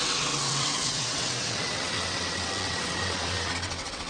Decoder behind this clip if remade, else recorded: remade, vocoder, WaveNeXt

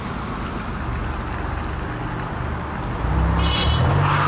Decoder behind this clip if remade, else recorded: recorded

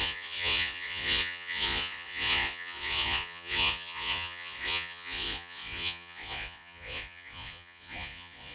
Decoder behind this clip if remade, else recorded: remade, vocoder, Vocos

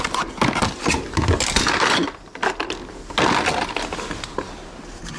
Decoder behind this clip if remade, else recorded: recorded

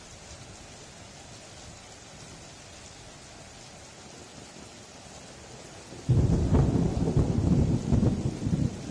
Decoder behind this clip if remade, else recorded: recorded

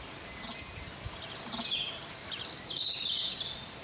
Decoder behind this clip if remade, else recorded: recorded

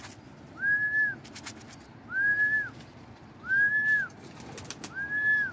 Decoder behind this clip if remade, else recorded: recorded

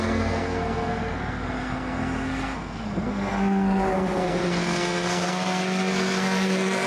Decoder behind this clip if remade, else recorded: remade, codec, SNAC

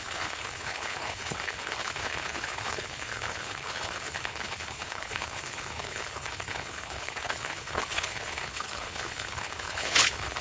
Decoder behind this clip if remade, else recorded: remade, codec, HILCodec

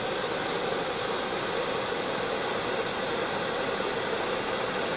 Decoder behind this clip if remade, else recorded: recorded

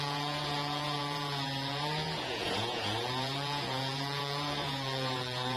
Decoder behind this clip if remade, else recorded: remade, vocoder, Vocos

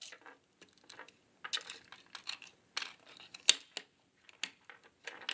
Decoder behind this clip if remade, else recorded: recorded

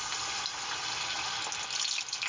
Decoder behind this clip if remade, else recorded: recorded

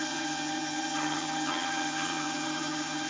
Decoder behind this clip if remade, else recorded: remade, vocoder, HiFi-GAN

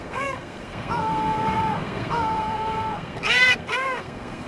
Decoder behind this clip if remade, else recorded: remade, codec, SNAC